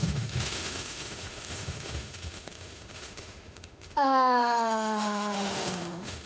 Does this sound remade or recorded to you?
remade